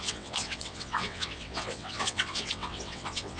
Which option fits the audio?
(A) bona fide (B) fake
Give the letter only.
B